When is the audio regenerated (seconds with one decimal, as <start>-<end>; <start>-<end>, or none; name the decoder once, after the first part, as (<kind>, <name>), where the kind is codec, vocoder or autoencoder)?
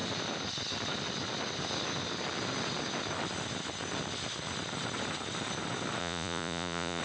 6.0-7.0 (vocoder, Vocos)